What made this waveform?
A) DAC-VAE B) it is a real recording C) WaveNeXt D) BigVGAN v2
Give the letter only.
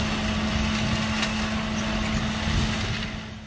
B